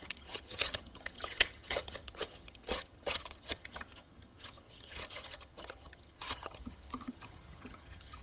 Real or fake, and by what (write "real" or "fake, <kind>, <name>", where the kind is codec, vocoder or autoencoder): fake, vocoder, HiFi-GAN